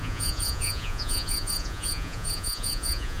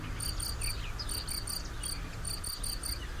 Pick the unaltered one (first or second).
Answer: second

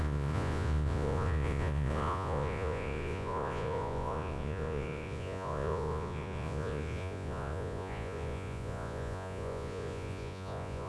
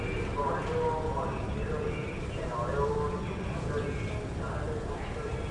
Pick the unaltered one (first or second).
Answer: second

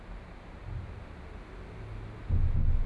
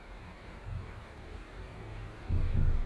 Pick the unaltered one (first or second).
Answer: first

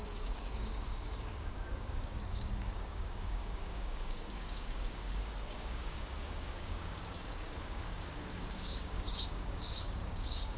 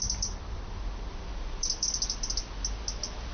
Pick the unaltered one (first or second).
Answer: second